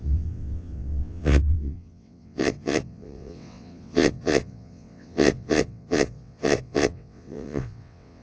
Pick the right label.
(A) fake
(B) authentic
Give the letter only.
A